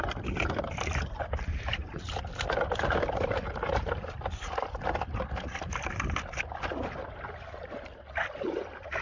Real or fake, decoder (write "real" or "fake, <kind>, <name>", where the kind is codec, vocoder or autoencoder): real